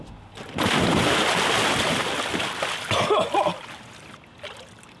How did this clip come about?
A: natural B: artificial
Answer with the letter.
A